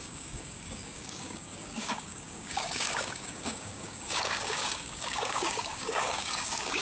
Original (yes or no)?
no